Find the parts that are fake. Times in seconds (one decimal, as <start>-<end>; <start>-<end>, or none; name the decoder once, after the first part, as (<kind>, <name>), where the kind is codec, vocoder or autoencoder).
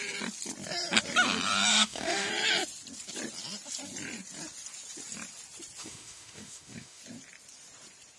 1.7-2.3 (autoencoder, DAC-VAE); 5.8-7.0